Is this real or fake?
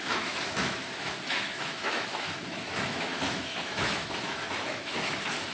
fake